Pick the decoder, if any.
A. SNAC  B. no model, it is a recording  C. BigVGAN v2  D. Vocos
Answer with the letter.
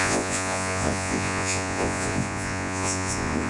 D